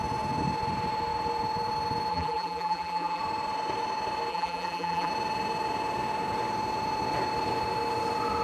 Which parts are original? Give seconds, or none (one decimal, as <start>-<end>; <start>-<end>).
0.0-2.1; 3.2-4.3; 5.1-8.4